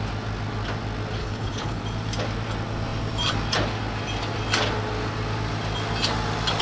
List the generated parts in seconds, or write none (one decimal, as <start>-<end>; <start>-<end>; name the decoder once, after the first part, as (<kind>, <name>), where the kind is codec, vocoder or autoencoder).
1.2-1.8 (codec, HILCodec)